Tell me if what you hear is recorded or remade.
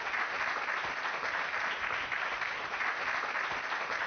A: recorded